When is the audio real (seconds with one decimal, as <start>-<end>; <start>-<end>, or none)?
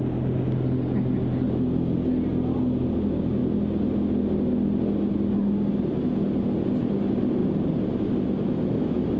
0.0-7.4; 7.9-9.2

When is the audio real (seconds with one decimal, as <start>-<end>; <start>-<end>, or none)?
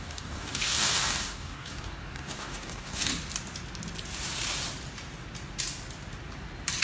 3.1-6.8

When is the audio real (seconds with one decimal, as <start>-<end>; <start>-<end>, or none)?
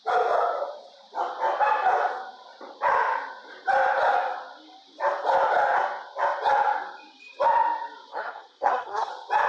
0.0-8.1; 9.1-9.5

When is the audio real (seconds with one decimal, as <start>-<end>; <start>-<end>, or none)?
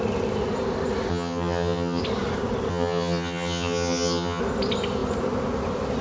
0.0-1.1; 2.0-2.7; 4.4-6.0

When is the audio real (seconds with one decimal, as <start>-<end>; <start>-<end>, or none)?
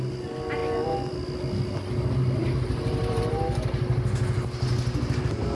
0.0-2.4; 3.3-5.5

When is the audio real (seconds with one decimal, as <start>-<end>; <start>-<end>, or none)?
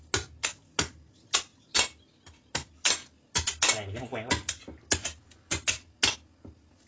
0.0-6.9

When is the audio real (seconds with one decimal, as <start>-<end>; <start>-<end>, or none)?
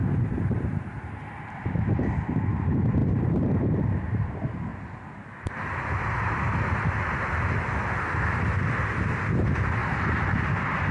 1.5-3.0; 4.3-9.8; 10.3-10.9